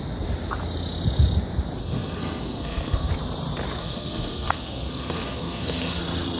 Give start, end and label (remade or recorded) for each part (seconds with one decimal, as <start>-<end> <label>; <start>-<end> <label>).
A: 0.0-1.8 recorded; 1.8-3.1 remade; 3.1-3.8 recorded; 3.8-6.0 remade; 6.0-6.4 recorded